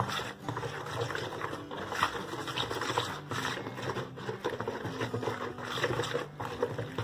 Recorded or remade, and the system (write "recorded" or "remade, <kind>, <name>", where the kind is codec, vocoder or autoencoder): recorded